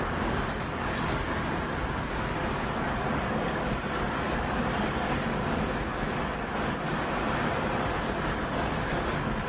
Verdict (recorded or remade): remade